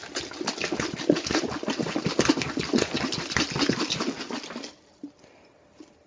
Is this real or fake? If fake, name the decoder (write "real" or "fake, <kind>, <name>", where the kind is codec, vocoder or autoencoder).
real